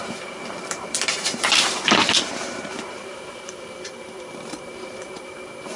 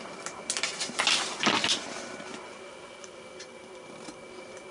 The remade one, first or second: first